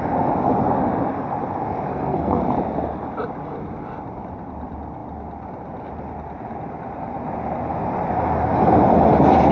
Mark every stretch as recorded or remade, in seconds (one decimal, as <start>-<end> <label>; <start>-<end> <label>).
0.0-1.9 recorded; 1.9-2.4 remade; 2.4-9.5 recorded